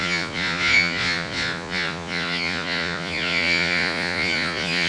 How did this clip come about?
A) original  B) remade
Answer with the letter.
B